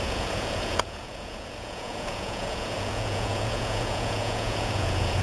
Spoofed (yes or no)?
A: yes